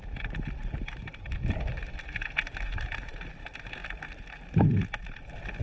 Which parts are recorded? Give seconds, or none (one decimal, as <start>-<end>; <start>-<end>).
0.0-5.6